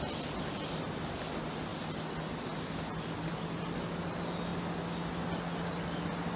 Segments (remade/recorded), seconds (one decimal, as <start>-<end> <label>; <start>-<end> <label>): 0.0-6.4 recorded